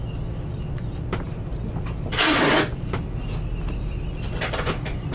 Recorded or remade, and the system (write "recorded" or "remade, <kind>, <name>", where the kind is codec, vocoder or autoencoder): recorded